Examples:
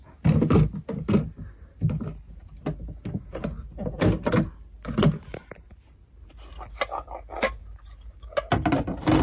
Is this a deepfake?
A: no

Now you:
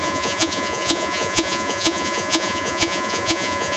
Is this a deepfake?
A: yes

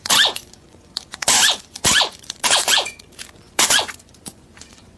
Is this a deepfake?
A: yes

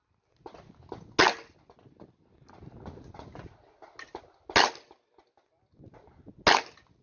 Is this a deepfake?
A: no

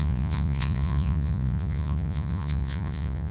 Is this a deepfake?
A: yes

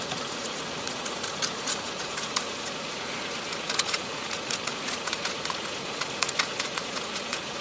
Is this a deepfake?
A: yes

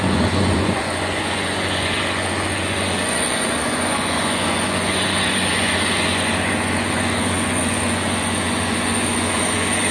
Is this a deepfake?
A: yes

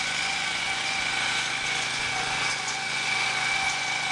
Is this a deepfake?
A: yes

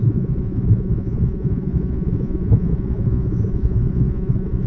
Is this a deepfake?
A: yes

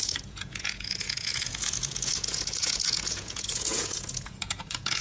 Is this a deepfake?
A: yes